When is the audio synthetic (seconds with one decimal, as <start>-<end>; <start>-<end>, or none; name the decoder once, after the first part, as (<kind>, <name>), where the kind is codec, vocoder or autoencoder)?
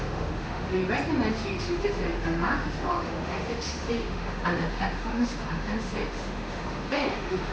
0.0-0.8 (autoencoder, DAC-VAE); 1.3-7.5